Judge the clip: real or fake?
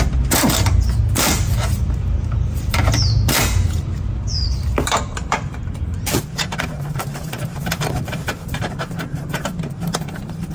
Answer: fake